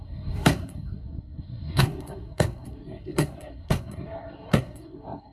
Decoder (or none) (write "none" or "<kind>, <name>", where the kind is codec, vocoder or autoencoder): codec, SNAC